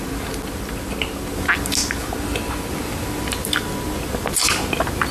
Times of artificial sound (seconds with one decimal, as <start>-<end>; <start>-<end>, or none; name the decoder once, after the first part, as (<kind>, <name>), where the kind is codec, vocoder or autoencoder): none

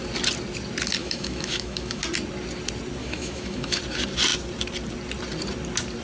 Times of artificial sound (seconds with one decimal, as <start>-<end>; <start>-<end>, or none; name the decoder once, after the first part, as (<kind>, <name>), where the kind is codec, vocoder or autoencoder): 1.0-2.0 (autoencoder, DAC-VAE); 3.0-3.8

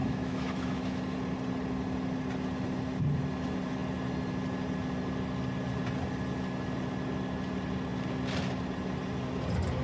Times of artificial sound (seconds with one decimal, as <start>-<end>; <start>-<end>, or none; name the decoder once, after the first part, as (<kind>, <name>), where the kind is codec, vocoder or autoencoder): 0.0-1.2 (autoencoder, DAC-VAE)

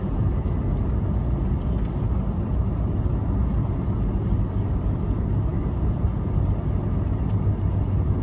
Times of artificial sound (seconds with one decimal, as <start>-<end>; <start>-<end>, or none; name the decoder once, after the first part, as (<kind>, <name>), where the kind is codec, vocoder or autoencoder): none